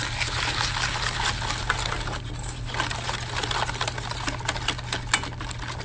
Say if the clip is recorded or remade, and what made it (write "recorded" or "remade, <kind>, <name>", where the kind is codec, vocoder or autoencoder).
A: recorded